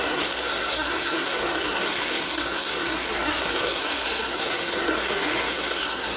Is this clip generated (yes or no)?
yes